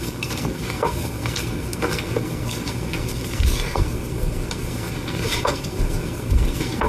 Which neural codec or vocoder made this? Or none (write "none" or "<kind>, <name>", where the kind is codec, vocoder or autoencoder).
codec, SNAC